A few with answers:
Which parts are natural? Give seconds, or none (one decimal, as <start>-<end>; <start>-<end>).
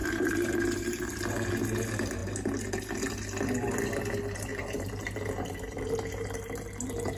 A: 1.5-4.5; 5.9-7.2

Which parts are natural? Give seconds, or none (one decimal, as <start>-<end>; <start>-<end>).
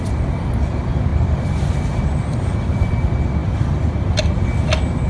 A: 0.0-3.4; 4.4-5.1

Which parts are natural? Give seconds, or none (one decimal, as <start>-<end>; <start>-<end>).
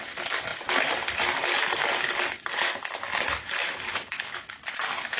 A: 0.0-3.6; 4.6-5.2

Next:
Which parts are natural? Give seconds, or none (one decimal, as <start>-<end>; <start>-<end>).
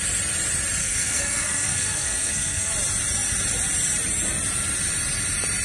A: 0.0-0.8; 2.7-5.6